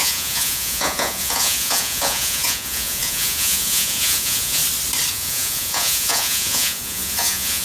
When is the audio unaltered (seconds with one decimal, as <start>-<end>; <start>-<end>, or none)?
4.6-5.1